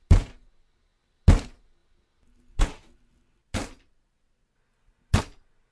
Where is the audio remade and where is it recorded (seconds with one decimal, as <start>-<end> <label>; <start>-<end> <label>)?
0.0-5.7 recorded